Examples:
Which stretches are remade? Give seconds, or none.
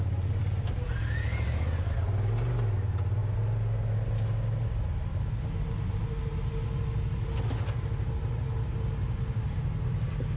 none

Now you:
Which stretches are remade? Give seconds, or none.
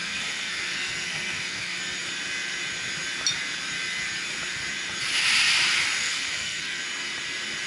0.0-1.8 (codec, SNAC); 6.0-6.8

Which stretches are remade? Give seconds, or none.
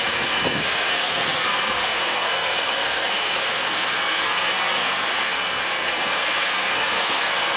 0.0-7.6 (codec, SNAC)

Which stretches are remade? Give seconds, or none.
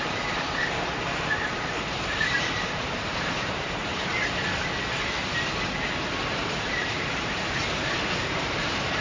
0.0-4.1 (vocoder, BigVGAN v2); 6.2-9.0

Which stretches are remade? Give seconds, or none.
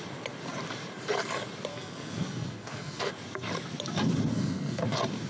1.7-3.1 (codec, SNAC); 4.3-4.8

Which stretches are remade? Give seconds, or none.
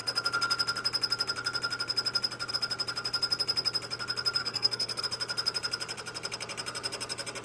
4.4-5.0 (codec, SNAC)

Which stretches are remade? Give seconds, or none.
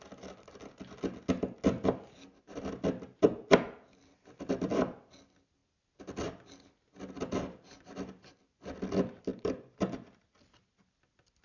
9.3-9.8 (vocoder, BigVGAN v2)